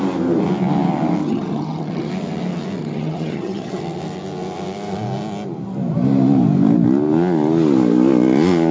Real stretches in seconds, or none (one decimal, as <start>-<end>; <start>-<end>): 0.0-1.2; 2.1-2.8; 3.8-8.7